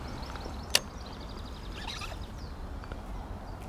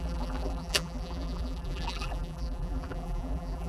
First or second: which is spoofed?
second